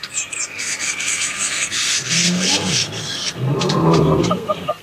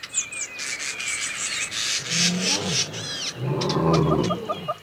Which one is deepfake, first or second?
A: first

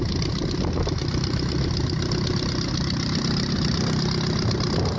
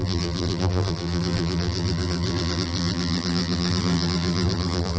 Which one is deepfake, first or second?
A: second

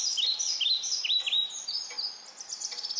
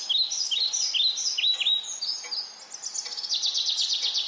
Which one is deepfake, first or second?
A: first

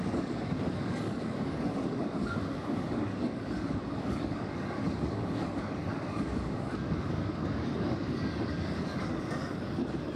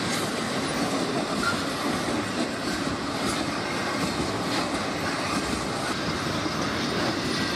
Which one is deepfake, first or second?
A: first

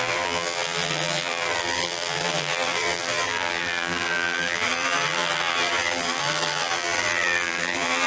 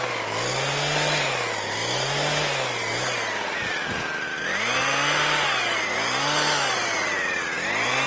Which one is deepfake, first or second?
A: first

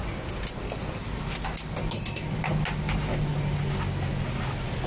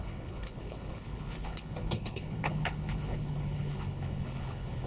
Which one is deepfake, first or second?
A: second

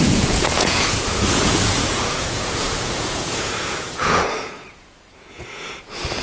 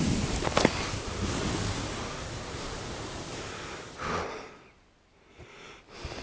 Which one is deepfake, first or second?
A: first